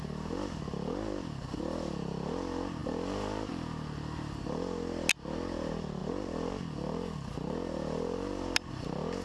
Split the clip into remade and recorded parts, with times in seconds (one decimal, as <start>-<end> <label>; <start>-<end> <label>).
0.0-9.2 recorded